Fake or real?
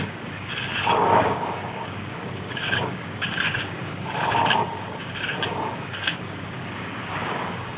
fake